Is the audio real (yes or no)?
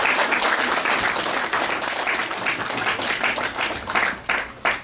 yes